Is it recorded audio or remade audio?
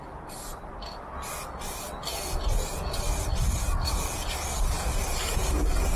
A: recorded